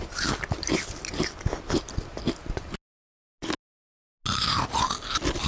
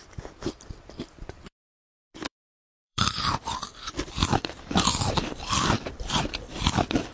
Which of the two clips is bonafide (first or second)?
first